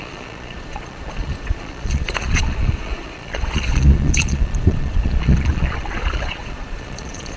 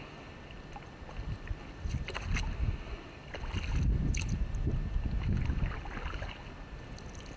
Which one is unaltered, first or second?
second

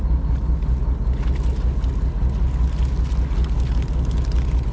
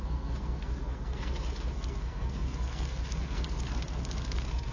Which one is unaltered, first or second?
first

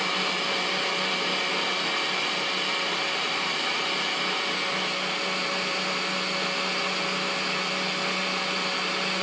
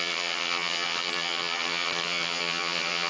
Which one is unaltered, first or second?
first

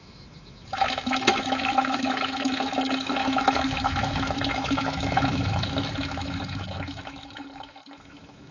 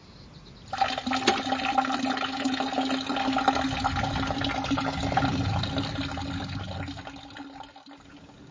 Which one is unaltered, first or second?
second